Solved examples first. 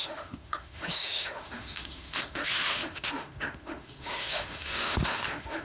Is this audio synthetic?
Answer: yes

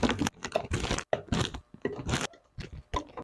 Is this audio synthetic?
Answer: yes